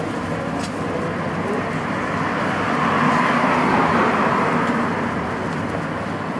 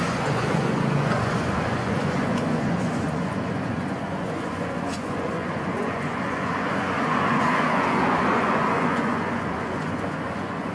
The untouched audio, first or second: first